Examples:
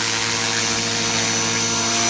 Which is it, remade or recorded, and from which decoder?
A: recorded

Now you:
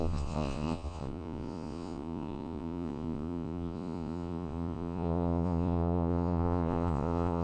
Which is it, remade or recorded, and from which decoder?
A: remade, vocoder, Vocos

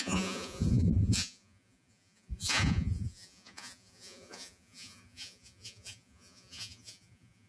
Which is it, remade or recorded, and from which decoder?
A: remade, vocoder, Vocos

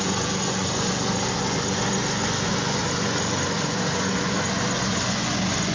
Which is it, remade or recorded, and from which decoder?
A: remade, vocoder, Vocos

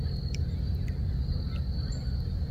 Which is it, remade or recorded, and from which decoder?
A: recorded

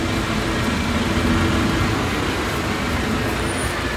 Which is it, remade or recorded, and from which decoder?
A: recorded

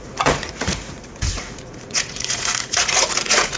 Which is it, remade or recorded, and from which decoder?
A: remade, vocoder, Vocos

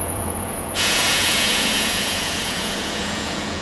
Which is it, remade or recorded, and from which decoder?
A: remade, vocoder, Vocos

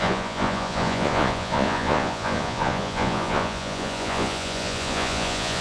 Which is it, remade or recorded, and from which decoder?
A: remade, vocoder, Vocos